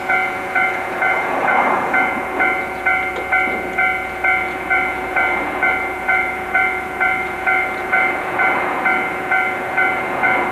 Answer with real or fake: fake